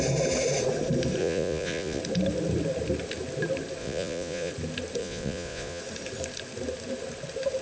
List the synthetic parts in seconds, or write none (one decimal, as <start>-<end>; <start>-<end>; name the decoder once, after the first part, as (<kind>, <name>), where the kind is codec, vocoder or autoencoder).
1.2-2.0 (vocoder, Vocos); 3.8-4.5; 5.0-5.8